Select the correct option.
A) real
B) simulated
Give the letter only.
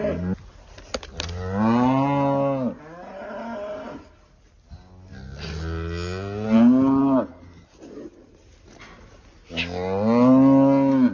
A